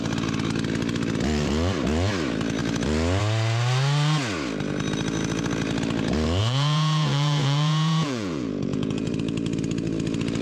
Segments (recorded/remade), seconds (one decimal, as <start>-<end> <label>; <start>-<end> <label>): 0.0-6.4 recorded; 6.4-9.1 remade; 9.1-10.4 recorded